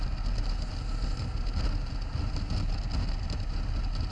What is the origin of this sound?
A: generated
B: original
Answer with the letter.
B